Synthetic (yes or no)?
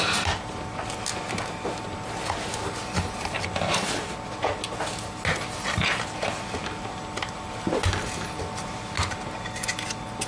no